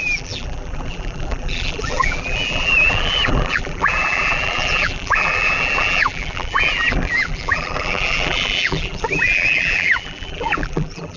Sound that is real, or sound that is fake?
fake